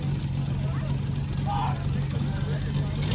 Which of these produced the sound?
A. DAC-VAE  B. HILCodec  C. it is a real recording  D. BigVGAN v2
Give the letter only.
C